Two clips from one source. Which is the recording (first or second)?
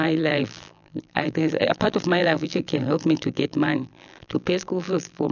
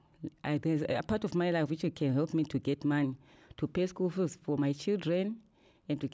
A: second